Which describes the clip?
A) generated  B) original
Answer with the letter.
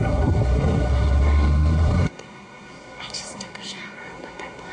A